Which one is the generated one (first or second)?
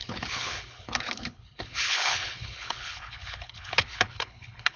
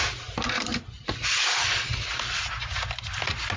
first